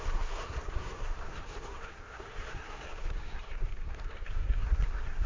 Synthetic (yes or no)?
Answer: yes